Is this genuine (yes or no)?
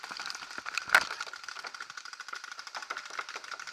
yes